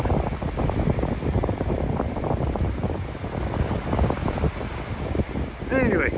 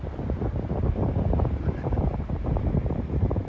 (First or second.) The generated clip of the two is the second